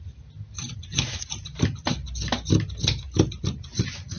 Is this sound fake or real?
real